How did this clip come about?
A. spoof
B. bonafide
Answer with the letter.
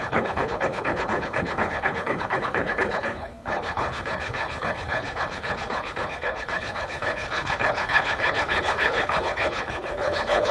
A